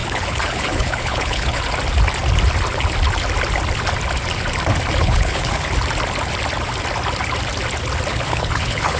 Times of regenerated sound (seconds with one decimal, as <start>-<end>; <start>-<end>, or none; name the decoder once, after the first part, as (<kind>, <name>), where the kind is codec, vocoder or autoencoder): 0.0-1.6 (codec, HILCodec); 5.0-5.7; 8.1-9.0